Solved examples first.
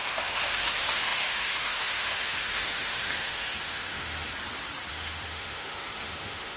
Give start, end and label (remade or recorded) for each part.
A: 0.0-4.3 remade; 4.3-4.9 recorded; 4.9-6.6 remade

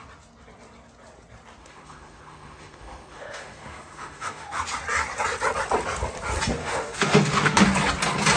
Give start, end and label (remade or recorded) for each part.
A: 0.0-1.6 recorded; 1.6-4.6 remade; 4.6-6.6 recorded; 6.6-7.6 remade; 7.6-8.4 recorded

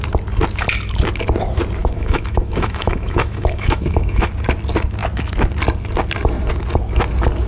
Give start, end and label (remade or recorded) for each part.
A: 0.0-1.8 recorded; 1.8-4.3 remade; 4.3-7.5 recorded

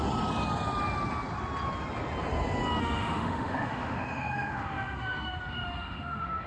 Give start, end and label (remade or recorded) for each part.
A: 0.0-2.8 recorded; 2.8-6.5 remade